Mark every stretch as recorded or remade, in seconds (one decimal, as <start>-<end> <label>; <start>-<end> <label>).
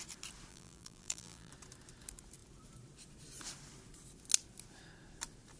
0.0-0.5 recorded; 0.5-1.5 remade; 1.5-5.6 recorded